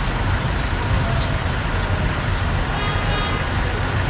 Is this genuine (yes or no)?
yes